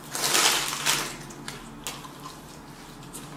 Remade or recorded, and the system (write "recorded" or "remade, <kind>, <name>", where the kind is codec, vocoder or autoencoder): recorded